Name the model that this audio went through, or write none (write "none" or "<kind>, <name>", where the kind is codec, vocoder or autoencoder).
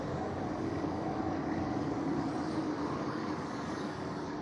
codec, DAC